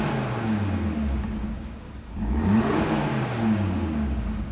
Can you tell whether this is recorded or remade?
remade